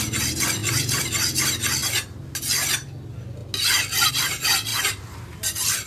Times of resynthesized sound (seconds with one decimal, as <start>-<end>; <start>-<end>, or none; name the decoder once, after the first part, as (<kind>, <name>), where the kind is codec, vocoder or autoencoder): 0.6-1.1 (vocoder, BigVGAN v2); 4.7-5.5